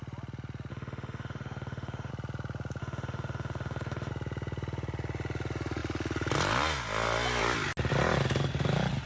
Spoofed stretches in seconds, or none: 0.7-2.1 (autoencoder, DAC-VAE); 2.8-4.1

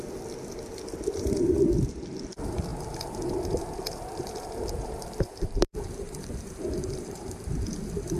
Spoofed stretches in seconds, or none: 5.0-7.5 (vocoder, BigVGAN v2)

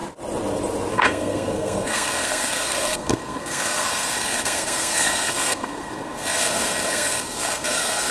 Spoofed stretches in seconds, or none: 0.9-8.1 (codec, SNAC)

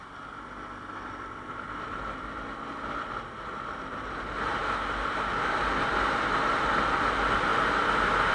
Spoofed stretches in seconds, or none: none

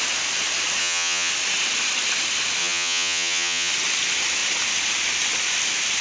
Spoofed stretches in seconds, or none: 0.8-1.3 (vocoder, HiFi-GAN); 2.6-3.7